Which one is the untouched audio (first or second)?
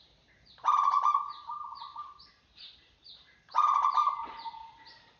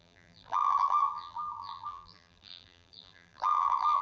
first